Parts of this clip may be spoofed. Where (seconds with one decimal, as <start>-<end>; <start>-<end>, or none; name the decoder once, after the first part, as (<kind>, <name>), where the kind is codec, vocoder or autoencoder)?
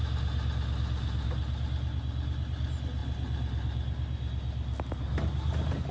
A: none